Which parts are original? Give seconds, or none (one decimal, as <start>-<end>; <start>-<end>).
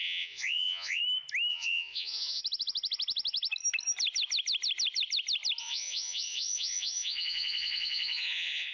1.0-1.5; 2.4-5.6